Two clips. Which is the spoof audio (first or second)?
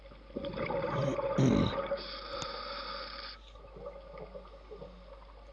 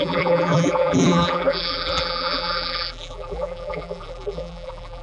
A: second